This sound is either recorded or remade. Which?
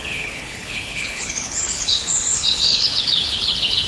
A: remade